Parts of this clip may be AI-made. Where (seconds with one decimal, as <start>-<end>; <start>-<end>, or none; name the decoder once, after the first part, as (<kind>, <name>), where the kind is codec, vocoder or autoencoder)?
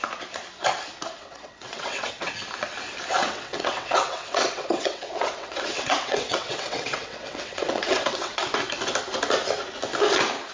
1.2-2.3 (vocoder, WaveNeXt); 3.2-8.4